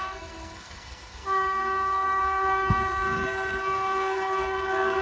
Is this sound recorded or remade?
remade